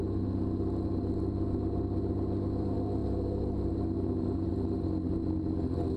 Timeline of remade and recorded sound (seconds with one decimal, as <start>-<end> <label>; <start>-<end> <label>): 0.0-6.0 recorded